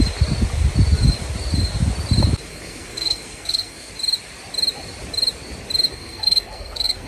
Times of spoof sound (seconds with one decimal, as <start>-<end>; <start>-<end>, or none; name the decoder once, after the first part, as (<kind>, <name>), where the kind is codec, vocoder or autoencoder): 2.5-3.9 (codec, SNAC); 5.9-7.1